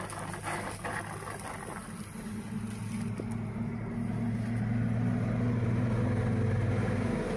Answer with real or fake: real